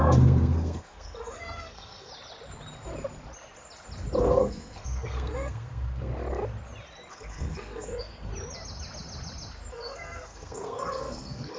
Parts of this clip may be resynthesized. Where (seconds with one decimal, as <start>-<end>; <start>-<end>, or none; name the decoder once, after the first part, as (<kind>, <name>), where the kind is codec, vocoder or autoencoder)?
0.0-2.1 (codec, SNAC); 4.2-6.1; 7.1-8.3; 9.7-11.6